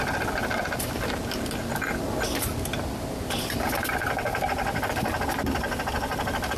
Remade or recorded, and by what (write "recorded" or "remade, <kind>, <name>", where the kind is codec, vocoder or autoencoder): recorded